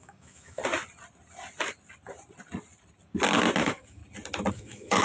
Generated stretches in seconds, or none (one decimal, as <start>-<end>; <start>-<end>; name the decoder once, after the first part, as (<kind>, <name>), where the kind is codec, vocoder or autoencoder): 0.0-0.6 (autoencoder, DAC-VAE); 3.6-4.0; 4.5-5.0